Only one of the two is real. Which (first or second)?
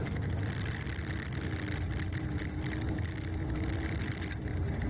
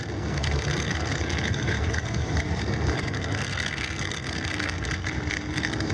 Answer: first